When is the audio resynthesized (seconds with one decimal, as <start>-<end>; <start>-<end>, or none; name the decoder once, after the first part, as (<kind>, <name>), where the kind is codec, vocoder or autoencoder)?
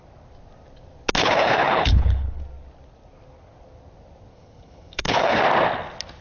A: 1.2-2.4 (codec, HILCodec); 4.3-5.4